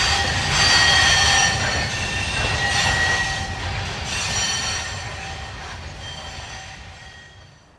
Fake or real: real